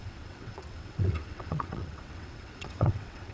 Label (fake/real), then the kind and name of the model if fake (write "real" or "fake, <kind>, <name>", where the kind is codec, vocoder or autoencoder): fake, vocoder, WaveNeXt